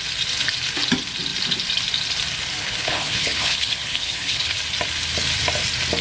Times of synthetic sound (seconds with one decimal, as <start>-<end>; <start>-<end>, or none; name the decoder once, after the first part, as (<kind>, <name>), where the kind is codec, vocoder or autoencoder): 2.6-4.6 (codec, HILCodec)